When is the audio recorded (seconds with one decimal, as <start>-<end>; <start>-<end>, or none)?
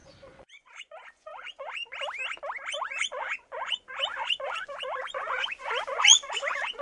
1.7-2.7